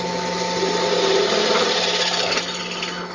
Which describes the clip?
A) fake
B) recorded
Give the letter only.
B